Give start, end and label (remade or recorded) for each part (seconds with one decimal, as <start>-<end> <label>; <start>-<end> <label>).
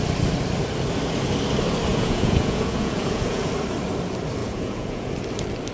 0.0-1.9 recorded; 1.9-3.5 remade; 3.5-4.4 recorded; 4.4-5.1 remade; 5.1-5.7 recorded